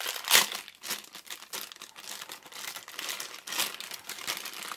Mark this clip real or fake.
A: real